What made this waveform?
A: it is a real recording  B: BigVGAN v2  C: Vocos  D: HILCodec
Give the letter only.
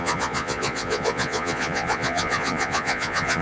C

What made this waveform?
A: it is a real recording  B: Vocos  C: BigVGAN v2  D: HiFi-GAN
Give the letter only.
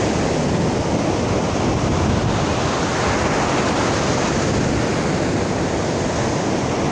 A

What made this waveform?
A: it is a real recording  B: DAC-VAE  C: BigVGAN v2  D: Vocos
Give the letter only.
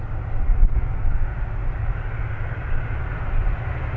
A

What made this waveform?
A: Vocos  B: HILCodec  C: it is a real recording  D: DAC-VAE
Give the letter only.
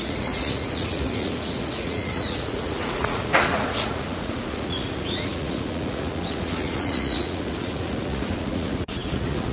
A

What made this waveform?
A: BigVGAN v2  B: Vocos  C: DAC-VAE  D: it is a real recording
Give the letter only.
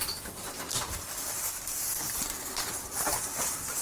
D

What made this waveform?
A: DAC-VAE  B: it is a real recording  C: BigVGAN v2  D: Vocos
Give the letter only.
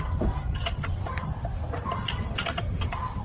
B